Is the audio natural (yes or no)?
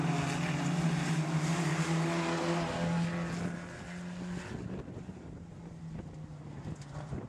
yes